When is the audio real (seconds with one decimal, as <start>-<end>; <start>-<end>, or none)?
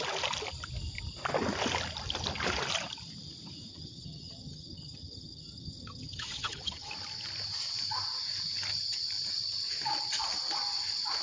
0.0-3.7; 6.9-11.2